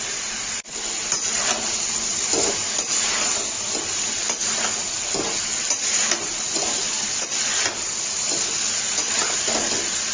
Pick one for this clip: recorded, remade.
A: recorded